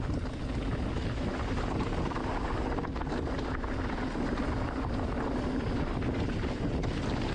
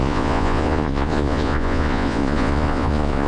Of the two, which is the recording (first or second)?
first